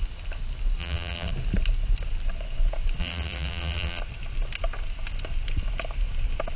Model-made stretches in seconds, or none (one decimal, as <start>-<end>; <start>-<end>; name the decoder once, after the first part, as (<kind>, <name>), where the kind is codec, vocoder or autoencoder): 0.8-1.3 (vocoder, BigVGAN v2); 3.0-4.0